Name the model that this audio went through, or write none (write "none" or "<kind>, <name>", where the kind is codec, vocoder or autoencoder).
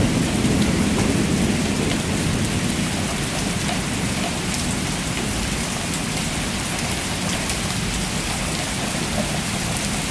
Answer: none